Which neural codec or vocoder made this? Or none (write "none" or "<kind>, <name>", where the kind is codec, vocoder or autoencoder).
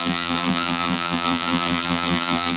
vocoder, BigVGAN v2